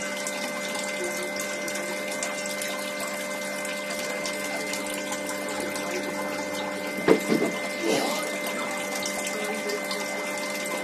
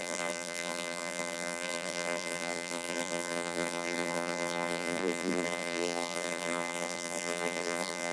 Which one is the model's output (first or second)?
second